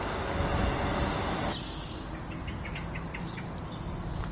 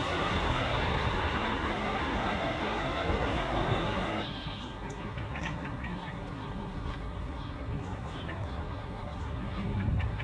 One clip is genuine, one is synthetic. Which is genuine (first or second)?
first